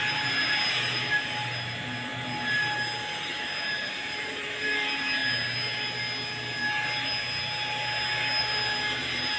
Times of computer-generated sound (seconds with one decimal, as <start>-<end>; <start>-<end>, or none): 0.0-2.1; 3.4-5.2; 8.4-9.4

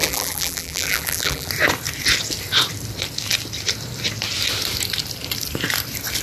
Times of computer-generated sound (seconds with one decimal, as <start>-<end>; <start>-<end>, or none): 0.0-1.5

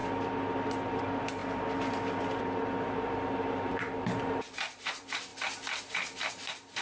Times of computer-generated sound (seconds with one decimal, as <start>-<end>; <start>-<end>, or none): 1.0-1.4; 2.8-5.3; 6.3-6.8

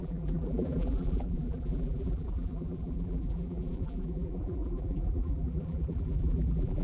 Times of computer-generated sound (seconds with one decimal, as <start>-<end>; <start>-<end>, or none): 0.0-6.8